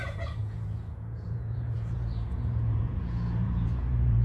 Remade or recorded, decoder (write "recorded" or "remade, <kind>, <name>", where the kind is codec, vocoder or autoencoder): remade, vocoder, Vocos